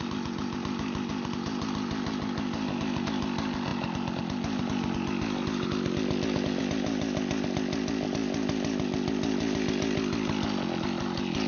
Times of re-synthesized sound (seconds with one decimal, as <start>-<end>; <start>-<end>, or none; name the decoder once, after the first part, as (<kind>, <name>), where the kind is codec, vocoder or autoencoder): none